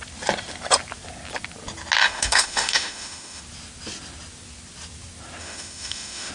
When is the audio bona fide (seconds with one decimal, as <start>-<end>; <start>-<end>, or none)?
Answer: 0.0-2.0; 3.4-5.4